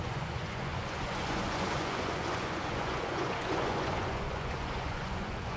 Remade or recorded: remade